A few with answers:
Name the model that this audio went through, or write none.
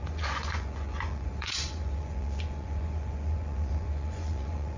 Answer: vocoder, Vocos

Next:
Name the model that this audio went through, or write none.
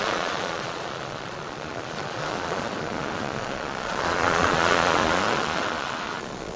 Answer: vocoder, Vocos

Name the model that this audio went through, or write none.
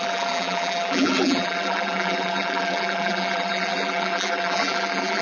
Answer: vocoder, BigVGAN v2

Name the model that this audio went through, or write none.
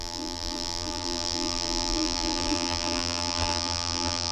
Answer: vocoder, BigVGAN v2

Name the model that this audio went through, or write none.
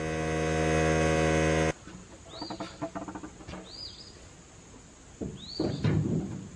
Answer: none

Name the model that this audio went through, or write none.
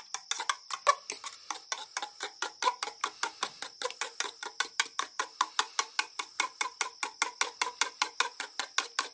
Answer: none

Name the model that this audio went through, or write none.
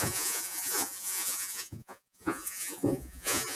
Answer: vocoder, Vocos